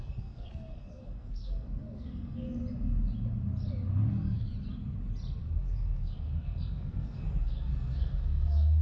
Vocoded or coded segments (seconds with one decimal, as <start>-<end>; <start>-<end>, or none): 0.0-2.6; 4.1-4.5; 5.4-8.8